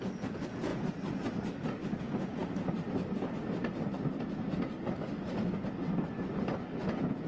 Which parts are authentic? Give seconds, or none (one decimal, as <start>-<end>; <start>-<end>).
0.7-2.0; 2.4-6.8